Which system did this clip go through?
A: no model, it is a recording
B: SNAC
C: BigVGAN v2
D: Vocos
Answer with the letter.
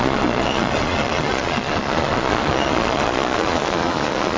D